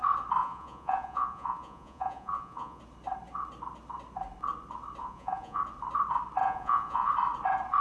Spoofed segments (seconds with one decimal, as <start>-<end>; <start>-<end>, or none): 0.4-2.8; 5.0-5.6; 6.4-7.1